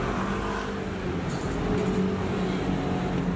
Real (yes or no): yes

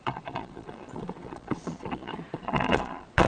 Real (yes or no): no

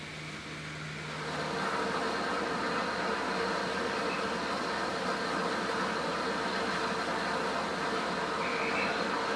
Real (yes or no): yes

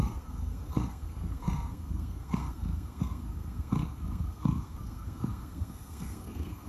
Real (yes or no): no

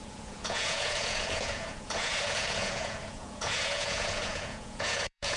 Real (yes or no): no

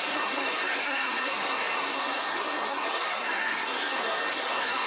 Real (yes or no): no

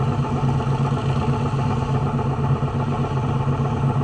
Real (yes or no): yes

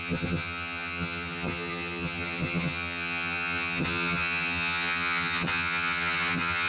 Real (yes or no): no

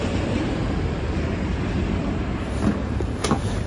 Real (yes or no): no